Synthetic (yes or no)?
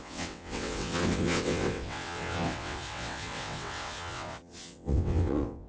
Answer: yes